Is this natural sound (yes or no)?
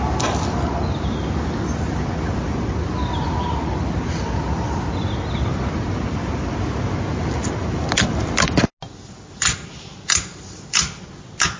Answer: yes